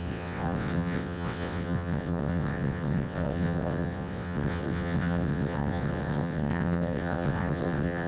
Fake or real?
fake